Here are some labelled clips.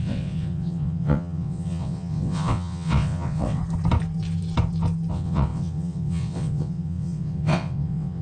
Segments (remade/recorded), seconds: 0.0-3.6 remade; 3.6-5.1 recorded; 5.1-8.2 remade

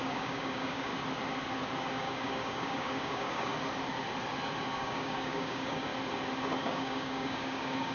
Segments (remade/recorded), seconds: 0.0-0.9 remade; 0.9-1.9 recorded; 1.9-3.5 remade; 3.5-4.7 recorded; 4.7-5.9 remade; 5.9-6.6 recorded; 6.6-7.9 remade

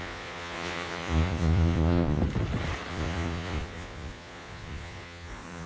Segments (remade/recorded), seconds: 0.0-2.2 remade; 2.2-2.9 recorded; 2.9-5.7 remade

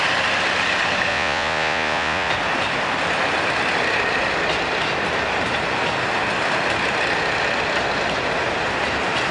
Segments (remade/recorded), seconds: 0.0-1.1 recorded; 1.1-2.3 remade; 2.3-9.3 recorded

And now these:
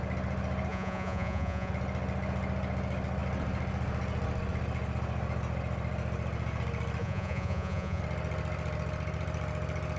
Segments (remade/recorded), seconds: 0.0-0.7 recorded; 0.7-1.7 remade; 1.7-7.0 recorded; 7.0-8.0 remade; 8.0-10.0 recorded

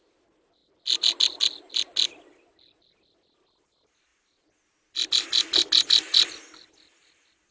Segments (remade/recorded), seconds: 0.0-7.5 recorded

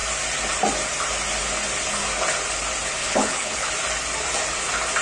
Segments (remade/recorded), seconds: 0.0-3.0 recorded; 3.0-3.7 remade; 3.7-5.0 recorded